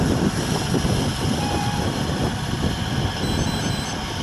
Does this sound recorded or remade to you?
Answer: recorded